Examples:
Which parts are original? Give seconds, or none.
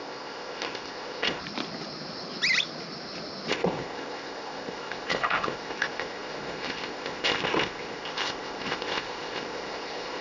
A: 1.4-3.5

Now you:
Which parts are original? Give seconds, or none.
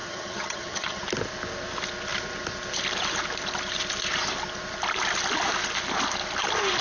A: 1.0-6.8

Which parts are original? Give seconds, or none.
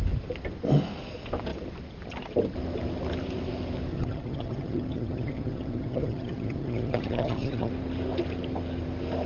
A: 0.0-3.9; 7.7-9.3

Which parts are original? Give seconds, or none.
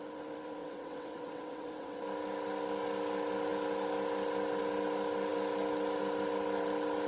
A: 0.0-0.6; 2.0-7.1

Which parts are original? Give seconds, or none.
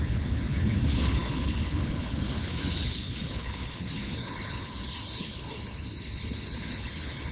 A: none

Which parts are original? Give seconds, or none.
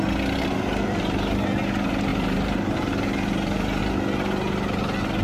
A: 0.0-2.1; 3.8-5.2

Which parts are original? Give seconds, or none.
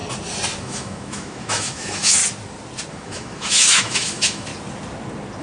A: 0.0-0.6; 2.2-2.9; 4.5-5.4